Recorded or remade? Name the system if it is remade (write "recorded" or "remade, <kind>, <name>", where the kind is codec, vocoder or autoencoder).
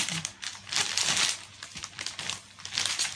recorded